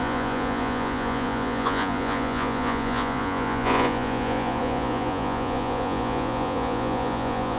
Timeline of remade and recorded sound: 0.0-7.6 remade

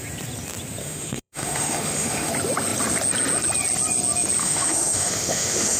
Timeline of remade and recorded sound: 0.0-0.8 recorded; 0.8-2.3 remade; 2.3-4.4 recorded; 4.4-5.8 remade

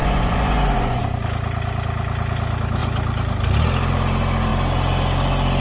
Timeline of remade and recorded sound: 0.0-1.0 remade; 1.0-5.6 recorded